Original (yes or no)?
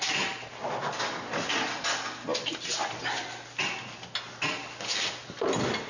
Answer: yes